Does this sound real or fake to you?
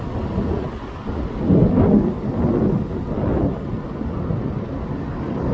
real